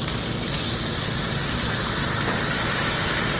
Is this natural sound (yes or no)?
yes